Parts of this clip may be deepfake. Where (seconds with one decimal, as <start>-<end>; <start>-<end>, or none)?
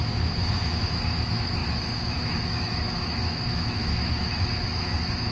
0.0-5.3